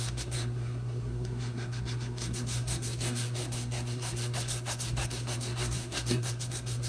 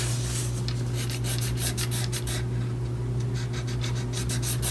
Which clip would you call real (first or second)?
second